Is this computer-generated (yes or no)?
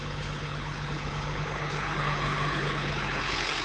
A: yes